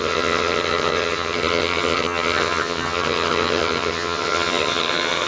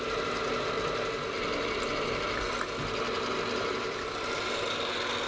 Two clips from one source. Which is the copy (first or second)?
first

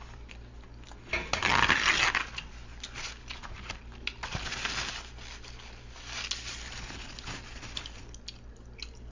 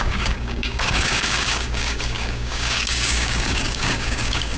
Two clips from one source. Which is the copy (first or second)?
second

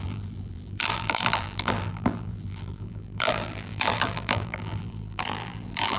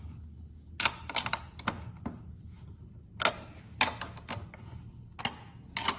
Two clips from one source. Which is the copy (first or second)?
first